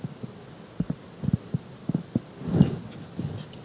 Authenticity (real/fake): real